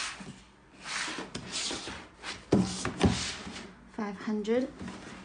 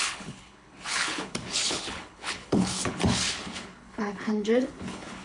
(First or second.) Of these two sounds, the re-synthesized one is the second